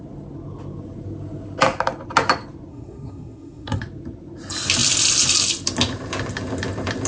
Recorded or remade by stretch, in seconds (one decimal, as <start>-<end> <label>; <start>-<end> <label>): 0.0-2.7 recorded; 2.7-3.8 remade; 3.8-7.1 recorded